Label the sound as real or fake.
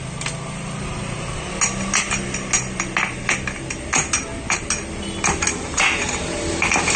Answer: real